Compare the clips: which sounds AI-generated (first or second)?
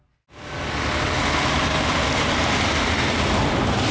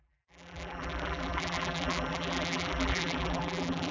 second